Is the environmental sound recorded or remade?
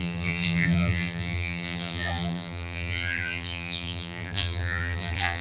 remade